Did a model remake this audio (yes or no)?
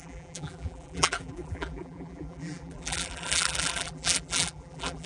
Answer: yes